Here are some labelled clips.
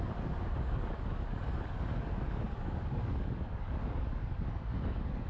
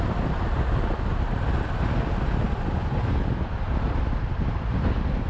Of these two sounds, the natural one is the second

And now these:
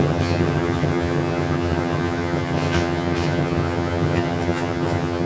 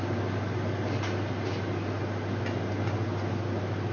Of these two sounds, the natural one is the second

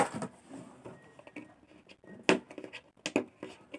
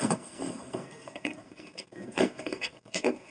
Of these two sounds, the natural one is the first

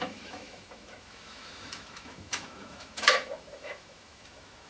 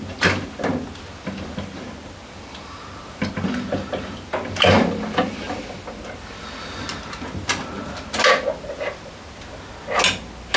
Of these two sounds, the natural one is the second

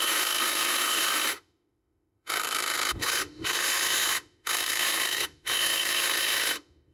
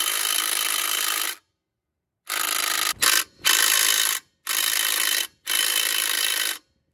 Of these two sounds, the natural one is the second